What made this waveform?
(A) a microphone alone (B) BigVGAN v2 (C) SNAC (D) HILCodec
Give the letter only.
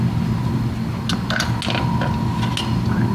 A